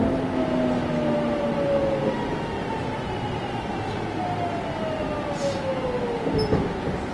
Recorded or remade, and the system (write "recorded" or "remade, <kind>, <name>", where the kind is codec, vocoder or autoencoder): recorded